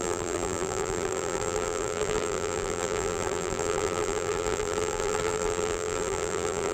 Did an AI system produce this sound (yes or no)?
yes